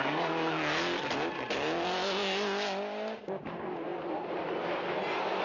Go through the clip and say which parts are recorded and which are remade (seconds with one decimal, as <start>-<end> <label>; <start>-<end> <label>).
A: 0.0-5.4 recorded